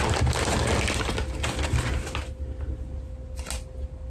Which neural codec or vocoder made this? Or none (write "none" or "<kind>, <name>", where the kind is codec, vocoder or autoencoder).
none